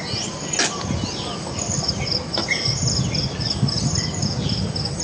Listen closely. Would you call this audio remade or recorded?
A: recorded